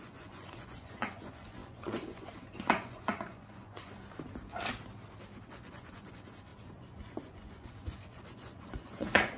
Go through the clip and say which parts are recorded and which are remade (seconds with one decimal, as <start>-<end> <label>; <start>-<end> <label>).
0.0-4.0 remade; 4.0-5.5 recorded; 5.5-9.4 remade